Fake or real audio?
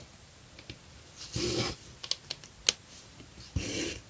real